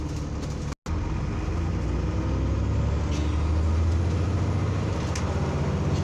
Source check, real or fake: real